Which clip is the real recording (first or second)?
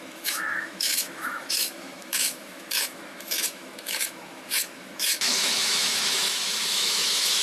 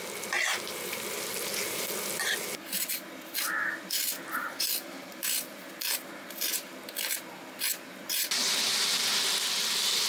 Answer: second